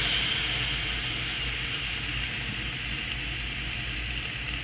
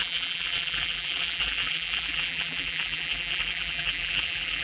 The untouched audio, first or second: first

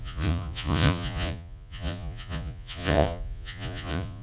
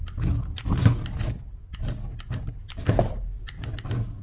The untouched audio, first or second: second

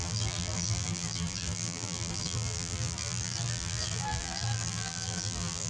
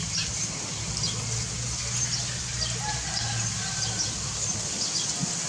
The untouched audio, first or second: second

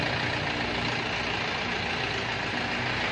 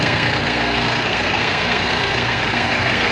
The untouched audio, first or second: first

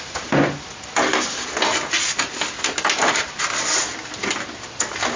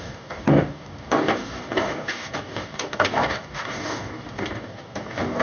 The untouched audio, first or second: first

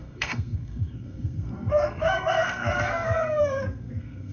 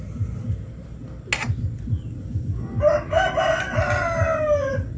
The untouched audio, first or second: second